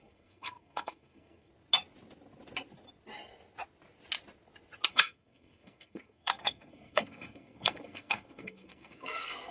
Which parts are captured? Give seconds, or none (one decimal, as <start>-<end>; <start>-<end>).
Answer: 1.5-4.9